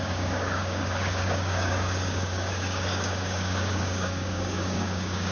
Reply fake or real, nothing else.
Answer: fake